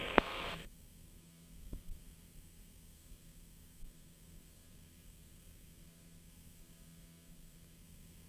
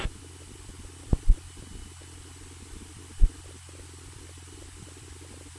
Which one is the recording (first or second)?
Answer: second